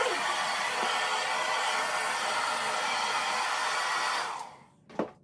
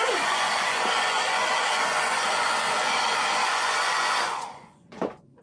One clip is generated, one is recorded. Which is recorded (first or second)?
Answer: first